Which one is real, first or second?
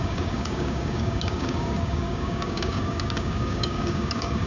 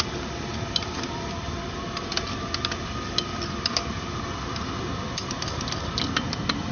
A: second